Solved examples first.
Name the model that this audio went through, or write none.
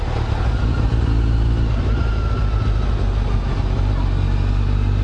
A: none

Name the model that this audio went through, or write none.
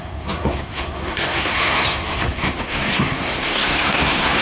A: codec, SNAC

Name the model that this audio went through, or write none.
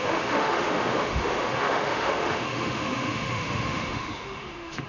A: autoencoder, DAC-VAE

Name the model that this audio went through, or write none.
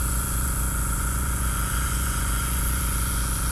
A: vocoder, Vocos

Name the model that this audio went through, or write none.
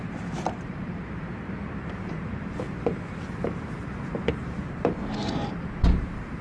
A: vocoder, BigVGAN v2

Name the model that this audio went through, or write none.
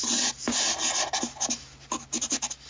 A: none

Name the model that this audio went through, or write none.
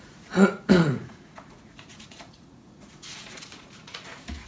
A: vocoder, Vocos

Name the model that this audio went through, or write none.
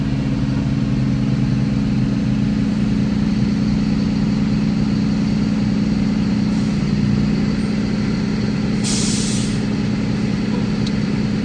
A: none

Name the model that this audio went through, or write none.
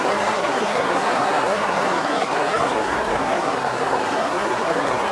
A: codec, SNAC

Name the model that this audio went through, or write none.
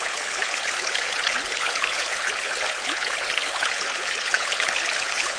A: codec, HILCodec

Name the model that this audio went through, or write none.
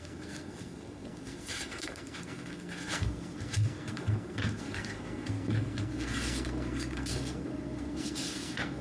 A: codec, SNAC